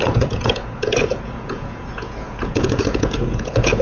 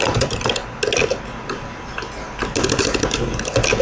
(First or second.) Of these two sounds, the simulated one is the first